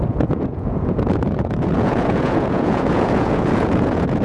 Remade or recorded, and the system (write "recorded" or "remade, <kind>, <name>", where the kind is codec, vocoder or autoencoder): remade, vocoder, Vocos